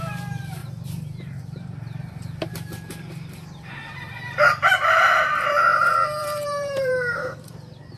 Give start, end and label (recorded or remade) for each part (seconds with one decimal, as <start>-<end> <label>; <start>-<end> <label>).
0.0-0.6 recorded; 0.6-2.5 remade; 2.5-5.7 recorded; 5.7-6.9 remade; 6.9-8.0 recorded